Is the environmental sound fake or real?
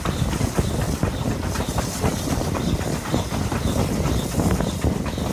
real